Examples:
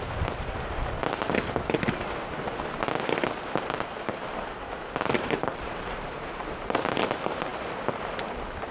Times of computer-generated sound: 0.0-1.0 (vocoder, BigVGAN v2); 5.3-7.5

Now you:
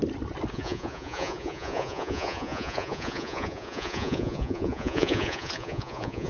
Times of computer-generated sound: 0.5-6.3 (vocoder, Vocos)

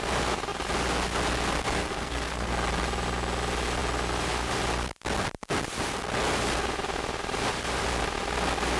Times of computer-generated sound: 1.8-2.5 (codec, SNAC)